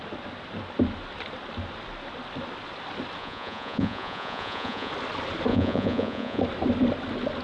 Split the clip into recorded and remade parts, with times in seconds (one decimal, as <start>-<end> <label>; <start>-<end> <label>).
0.0-3.2 recorded; 3.2-4.9 remade; 4.9-5.5 recorded; 5.5-6.4 remade; 6.4-7.4 recorded